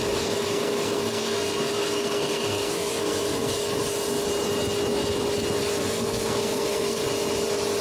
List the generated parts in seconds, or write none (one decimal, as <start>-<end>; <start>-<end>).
0.0-3.6; 5.8-7.0